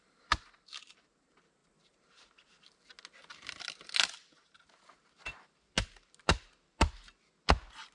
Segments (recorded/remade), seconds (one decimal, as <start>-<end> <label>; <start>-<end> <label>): 0.0-7.9 recorded